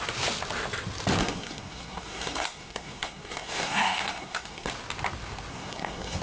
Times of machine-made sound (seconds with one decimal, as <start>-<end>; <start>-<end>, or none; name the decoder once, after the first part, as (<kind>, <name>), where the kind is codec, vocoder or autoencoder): 1.2-4.7 (codec, SNAC); 5.5-6.2